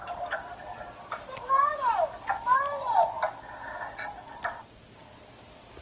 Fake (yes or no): no